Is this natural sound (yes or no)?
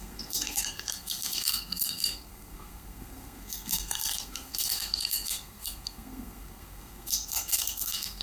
no